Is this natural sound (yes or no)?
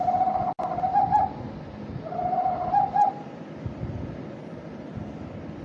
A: yes